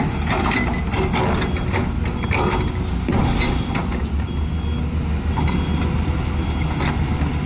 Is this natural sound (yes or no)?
yes